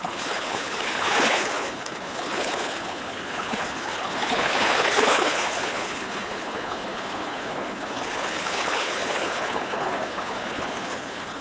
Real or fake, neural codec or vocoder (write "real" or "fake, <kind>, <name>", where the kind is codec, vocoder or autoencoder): fake, codec, HILCodec